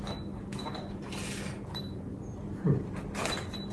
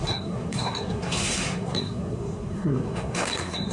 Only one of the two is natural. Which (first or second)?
first